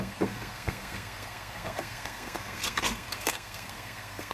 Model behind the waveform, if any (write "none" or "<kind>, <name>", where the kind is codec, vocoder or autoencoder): codec, SNAC